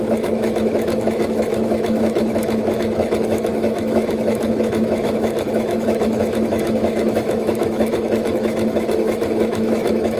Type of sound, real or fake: fake